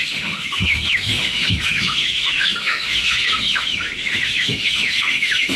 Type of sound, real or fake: fake